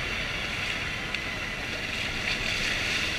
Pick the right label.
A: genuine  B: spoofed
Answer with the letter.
A